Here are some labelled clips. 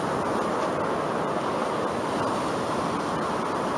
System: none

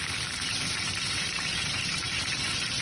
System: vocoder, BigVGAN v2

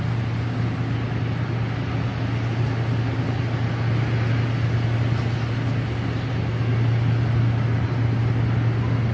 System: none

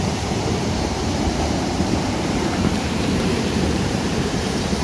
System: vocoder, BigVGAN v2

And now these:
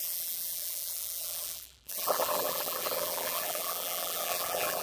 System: vocoder, BigVGAN v2